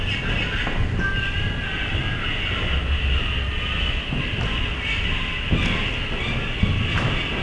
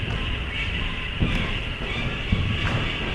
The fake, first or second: second